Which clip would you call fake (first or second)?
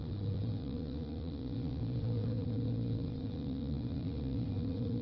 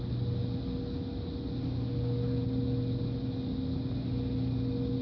first